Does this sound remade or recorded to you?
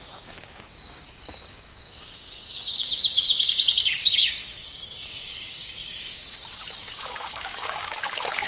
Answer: remade